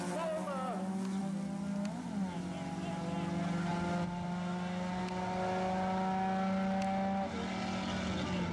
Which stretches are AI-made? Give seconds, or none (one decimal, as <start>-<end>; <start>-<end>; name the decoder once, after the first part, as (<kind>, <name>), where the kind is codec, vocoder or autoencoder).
none